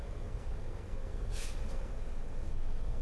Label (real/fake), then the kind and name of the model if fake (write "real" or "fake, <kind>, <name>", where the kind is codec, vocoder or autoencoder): fake, codec, SNAC